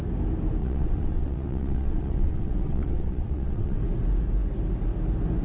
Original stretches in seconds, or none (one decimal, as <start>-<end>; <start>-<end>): 0.0-0.6; 3.8-5.4